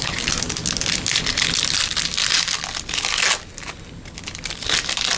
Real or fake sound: real